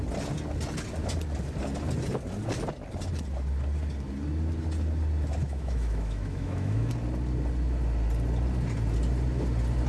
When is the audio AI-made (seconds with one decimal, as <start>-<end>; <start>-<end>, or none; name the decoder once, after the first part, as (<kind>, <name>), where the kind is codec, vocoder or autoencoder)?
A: 5.4-6.9 (autoencoder, DAC-VAE)